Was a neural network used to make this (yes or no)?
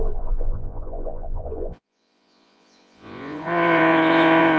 yes